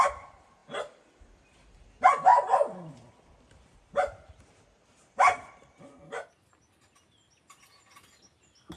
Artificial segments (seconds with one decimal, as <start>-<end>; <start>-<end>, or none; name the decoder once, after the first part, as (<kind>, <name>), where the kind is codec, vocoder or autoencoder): 2.3-5.8 (vocoder, BigVGAN v2)